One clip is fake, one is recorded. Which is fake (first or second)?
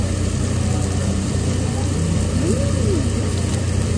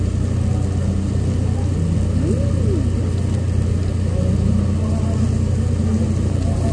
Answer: first